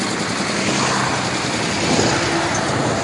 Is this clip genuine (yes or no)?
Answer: yes